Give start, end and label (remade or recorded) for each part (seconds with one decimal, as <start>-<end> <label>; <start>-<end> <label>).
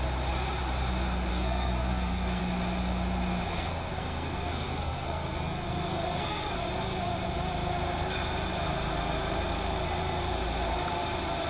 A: 0.0-1.3 recorded; 1.3-2.4 remade; 2.4-3.5 recorded; 3.5-6.5 remade; 6.5-11.5 recorded